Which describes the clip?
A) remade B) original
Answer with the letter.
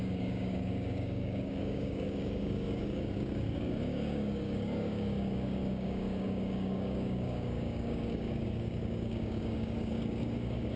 A